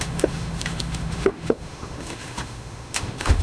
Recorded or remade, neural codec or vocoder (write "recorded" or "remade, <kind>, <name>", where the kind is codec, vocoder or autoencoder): remade, autoencoder, DAC-VAE